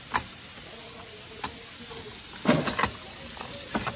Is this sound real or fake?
real